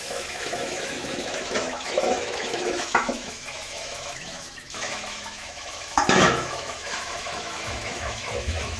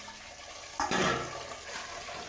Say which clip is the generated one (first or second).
first